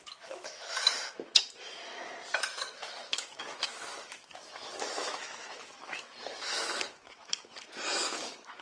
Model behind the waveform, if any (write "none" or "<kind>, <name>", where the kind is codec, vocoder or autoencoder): autoencoder, DAC-VAE